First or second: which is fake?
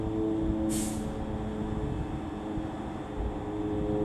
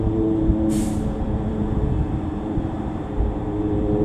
second